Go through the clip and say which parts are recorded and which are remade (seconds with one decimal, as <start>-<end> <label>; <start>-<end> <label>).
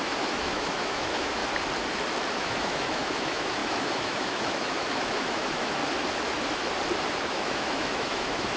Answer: 0.0-1.4 remade; 1.4-2.4 recorded; 2.4-5.8 remade; 5.8-7.1 recorded; 7.1-8.6 remade